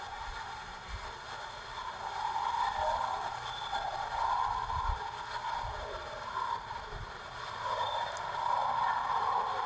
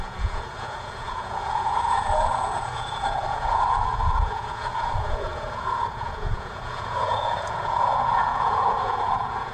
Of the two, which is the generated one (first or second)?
second